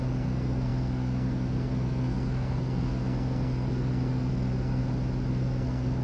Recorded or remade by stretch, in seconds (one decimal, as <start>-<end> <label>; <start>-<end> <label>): 0.0-4.8 remade; 4.8-5.3 recorded; 5.3-6.0 remade